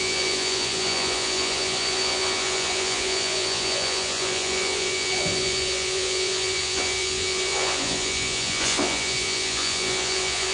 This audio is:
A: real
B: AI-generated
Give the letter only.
B